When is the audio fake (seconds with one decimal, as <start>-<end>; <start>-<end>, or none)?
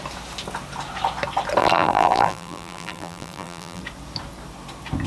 1.6-3.8